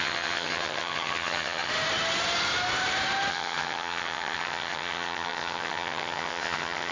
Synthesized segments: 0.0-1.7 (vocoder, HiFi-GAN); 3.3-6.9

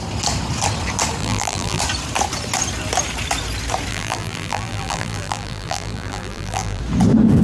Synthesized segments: 1.2-1.8 (vocoder, BigVGAN v2); 3.9-6.8

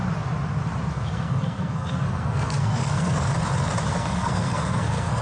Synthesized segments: 0.9-3.3 (codec, SNAC); 3.9-5.2

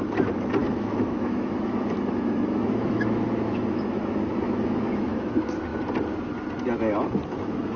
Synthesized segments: 0.6-5.3 (autoencoder, DAC-VAE)

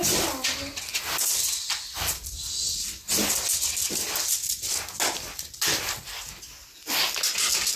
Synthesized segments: none

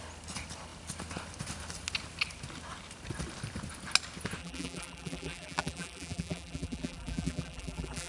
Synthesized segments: 4.4-8.1 (vocoder, BigVGAN v2)